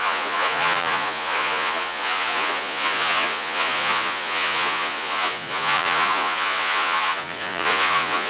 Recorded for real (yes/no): no